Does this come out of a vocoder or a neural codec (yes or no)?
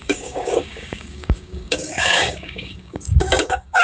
yes